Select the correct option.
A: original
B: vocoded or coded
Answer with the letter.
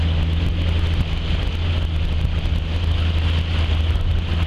A